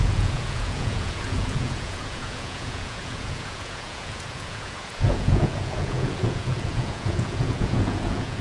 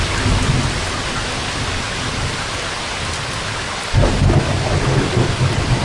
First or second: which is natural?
second